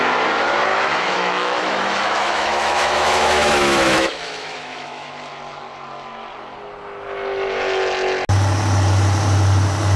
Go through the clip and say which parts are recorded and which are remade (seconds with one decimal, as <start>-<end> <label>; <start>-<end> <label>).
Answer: 0.0-0.7 recorded; 0.7-5.1 remade; 5.1-10.0 recorded